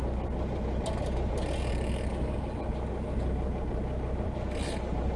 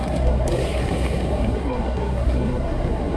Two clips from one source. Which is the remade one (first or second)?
second